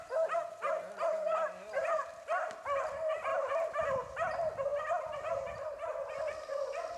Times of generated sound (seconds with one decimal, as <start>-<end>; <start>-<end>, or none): none